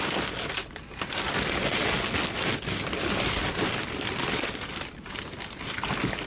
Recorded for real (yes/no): yes